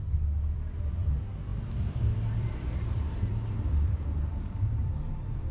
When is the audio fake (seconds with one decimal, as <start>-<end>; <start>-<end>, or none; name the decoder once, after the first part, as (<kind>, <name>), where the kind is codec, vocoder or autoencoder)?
1.5-4.8 (vocoder, BigVGAN v2)